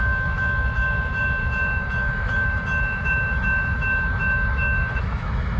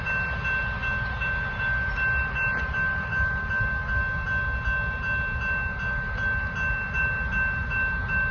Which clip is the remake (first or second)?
first